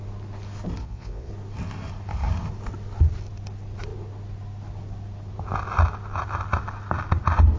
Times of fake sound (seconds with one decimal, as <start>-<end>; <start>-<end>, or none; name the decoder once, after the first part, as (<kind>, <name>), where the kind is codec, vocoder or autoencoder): 0.8-1.3 (vocoder, Vocos)